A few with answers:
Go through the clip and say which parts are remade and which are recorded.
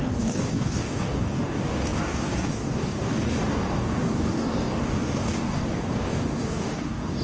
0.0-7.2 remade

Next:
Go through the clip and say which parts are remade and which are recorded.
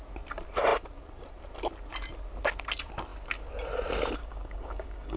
0.0-4.2 recorded; 4.2-5.2 remade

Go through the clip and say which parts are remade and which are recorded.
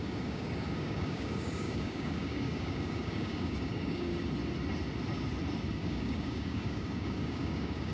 0.0-4.1 remade; 4.1-5.7 recorded; 5.7-7.9 remade